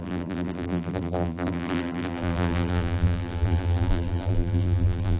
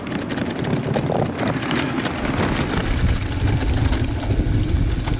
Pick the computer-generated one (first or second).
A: first